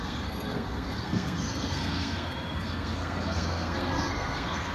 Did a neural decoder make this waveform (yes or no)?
yes